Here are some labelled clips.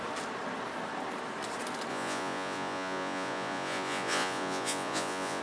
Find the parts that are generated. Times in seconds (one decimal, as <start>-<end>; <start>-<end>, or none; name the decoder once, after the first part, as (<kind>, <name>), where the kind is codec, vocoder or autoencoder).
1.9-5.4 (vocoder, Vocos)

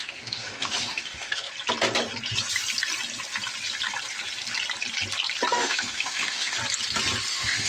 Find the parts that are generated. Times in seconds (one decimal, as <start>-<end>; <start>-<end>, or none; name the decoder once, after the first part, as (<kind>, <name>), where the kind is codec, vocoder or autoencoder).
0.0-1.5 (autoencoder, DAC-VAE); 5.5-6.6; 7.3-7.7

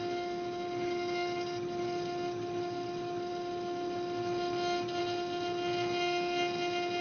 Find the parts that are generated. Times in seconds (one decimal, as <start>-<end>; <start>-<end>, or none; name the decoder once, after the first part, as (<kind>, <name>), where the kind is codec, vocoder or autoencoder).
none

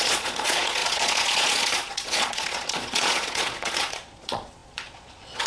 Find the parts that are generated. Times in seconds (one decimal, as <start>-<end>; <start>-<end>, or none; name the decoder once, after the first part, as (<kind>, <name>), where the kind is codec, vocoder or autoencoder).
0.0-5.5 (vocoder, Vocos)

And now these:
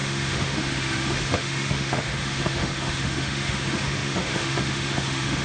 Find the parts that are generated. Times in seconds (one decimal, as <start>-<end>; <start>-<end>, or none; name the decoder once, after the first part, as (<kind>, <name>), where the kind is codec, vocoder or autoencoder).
0.0-5.4 (autoencoder, DAC-VAE)

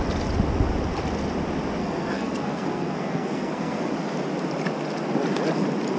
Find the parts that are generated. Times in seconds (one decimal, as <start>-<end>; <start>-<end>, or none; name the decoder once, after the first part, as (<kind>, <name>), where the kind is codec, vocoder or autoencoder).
1.8-3.9 (codec, SNAC)

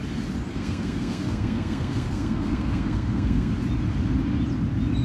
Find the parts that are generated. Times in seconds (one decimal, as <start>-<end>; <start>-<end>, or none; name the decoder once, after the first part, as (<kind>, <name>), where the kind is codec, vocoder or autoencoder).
0.5-3.5 (codec, SNAC)